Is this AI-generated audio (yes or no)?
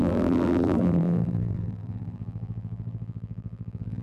yes